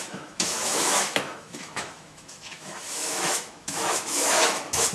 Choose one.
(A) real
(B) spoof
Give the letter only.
B